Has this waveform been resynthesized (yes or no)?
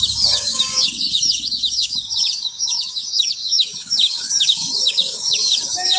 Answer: yes